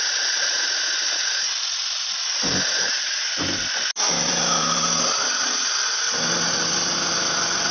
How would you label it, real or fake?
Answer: real